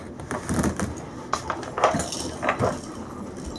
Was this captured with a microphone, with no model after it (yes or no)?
yes